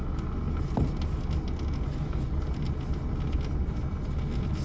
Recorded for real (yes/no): yes